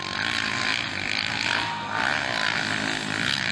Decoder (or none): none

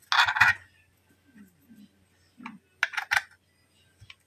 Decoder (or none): none